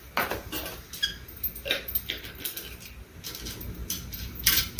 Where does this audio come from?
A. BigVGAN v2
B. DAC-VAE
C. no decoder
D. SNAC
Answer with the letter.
C